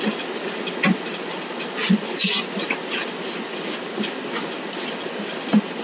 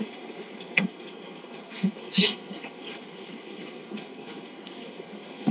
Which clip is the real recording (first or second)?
first